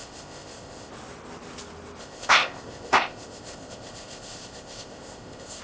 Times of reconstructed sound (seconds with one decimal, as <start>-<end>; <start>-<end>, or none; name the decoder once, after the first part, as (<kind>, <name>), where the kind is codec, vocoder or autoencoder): 0.0-0.9 (codec, ZipCodec); 2.0-5.6